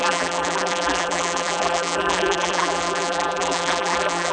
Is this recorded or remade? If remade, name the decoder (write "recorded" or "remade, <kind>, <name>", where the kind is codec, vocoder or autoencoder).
remade, vocoder, BigVGAN v2